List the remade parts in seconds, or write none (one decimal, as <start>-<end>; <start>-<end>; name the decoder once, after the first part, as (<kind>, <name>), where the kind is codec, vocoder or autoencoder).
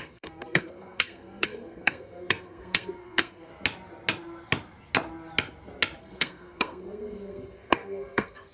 0.0-3.5 (codec, SNAC); 6.0-8.5